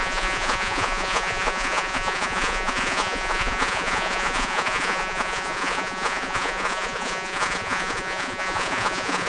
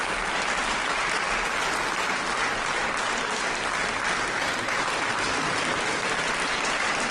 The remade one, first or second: first